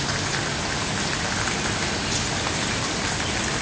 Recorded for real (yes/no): yes